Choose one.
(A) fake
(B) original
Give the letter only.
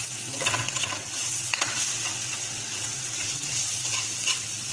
A